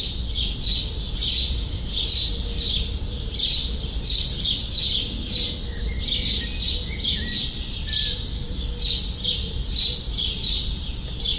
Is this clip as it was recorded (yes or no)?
yes